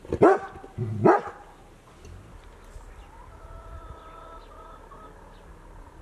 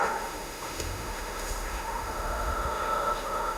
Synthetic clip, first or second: second